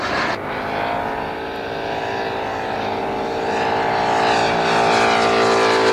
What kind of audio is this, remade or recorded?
recorded